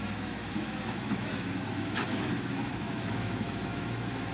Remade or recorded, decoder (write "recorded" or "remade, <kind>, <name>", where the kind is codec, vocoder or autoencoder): remade, autoencoder, DAC-VAE